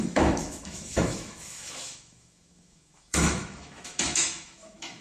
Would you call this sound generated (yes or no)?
yes